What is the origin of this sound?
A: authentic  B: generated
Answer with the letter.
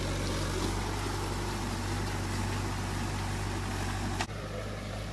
A